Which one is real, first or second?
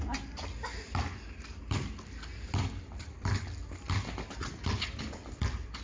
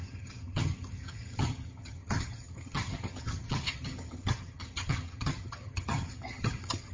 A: first